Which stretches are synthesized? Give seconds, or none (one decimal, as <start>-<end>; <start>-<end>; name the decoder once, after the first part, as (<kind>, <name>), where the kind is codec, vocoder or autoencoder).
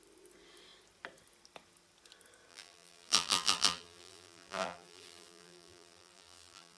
2.5-6.8 (vocoder, BigVGAN v2)